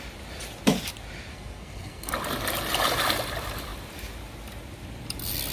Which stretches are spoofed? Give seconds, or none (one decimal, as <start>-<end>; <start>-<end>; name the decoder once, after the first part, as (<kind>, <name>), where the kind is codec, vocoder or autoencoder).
1.3-2.1 (codec, SNAC)